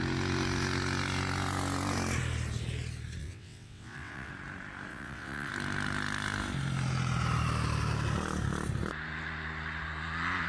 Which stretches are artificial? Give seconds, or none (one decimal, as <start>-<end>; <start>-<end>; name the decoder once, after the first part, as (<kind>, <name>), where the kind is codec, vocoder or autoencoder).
3.2-4.3 (vocoder, WaveNeXt); 4.9-5.5